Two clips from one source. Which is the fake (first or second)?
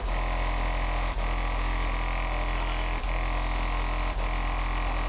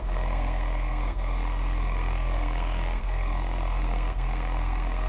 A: second